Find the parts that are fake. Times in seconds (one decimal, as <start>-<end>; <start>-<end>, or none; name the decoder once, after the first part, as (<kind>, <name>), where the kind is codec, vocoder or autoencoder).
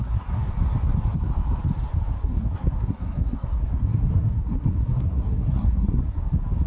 0.0-0.5 (codec, SNAC); 2.2-6.2